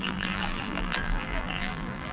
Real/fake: fake